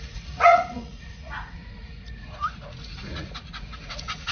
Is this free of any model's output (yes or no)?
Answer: no